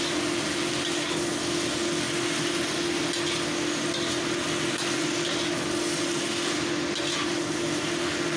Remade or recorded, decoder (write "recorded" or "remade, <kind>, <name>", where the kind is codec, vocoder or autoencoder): recorded